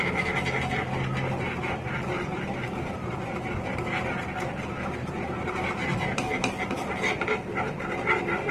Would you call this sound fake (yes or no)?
no